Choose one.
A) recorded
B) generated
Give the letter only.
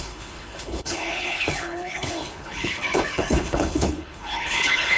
B